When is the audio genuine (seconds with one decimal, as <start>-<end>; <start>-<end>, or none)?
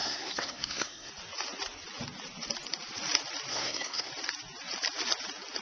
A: 1.1-3.5; 4.1-5.6